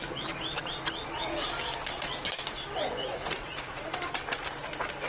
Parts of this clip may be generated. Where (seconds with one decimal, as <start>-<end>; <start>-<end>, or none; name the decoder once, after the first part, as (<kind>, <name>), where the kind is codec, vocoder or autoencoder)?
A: 3.0-3.8 (vocoder, Vocos)